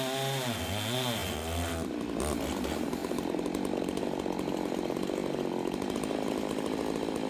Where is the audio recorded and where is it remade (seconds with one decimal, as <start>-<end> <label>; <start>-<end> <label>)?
0.0-7.3 recorded